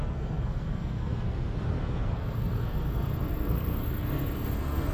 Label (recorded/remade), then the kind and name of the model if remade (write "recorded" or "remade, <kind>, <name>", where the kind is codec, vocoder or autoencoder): remade, codec, SNAC